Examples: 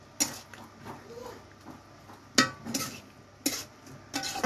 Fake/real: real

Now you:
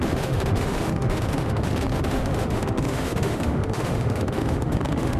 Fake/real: fake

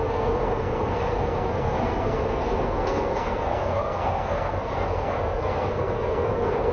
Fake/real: fake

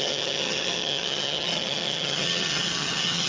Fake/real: fake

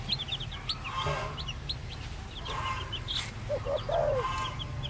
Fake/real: real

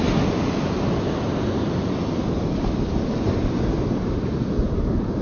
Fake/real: real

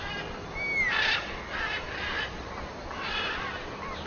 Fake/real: real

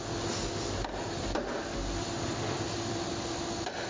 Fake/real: real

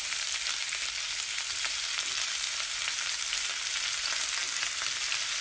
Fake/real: real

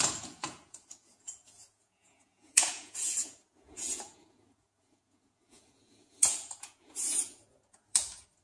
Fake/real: fake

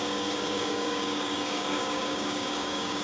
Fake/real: fake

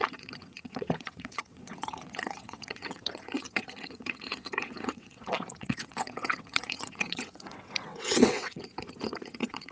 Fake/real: fake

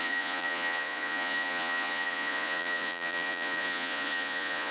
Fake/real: fake